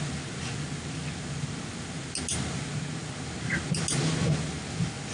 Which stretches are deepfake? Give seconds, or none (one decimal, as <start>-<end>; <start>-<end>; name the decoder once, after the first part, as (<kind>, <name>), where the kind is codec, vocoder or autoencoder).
none